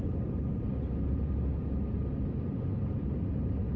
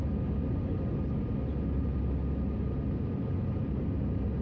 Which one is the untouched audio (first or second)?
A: second